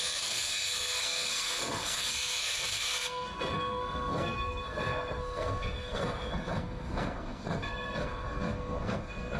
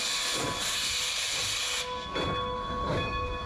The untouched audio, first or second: second